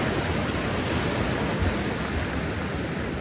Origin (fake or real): real